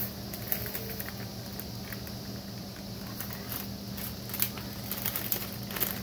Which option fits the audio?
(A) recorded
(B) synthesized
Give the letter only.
A